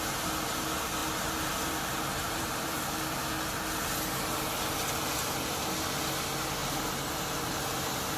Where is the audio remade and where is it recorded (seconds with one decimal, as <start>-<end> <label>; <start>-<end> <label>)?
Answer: 0.0-1.0 recorded; 1.0-2.8 remade; 2.8-6.6 recorded; 6.6-8.2 remade